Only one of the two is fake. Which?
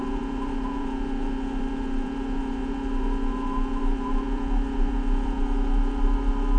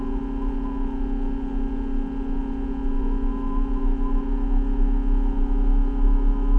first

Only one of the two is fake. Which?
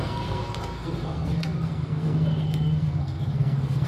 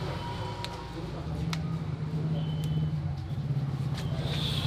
first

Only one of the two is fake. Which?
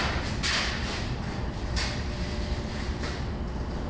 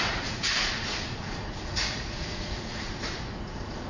second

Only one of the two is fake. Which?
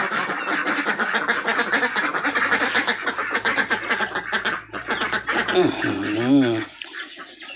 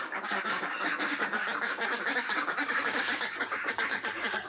second